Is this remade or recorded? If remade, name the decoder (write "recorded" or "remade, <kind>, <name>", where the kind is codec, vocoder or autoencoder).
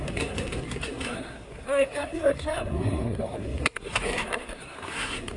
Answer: remade, codec, SNAC